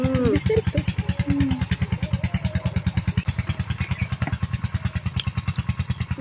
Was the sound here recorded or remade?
recorded